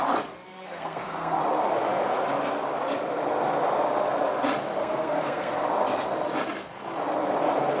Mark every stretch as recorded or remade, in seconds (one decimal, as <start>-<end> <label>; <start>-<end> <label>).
0.0-0.5 recorded; 0.5-1.4 remade; 1.4-4.8 recorded; 4.8-5.5 remade; 5.5-7.8 recorded